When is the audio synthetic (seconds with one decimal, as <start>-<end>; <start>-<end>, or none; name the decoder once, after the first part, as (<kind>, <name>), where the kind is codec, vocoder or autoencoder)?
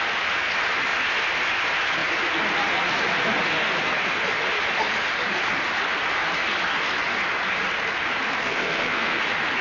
8.4-9.2 (codec, SNAC)